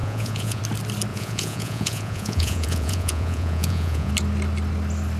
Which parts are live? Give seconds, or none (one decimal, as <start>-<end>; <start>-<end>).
0.6-1.1; 4.1-5.2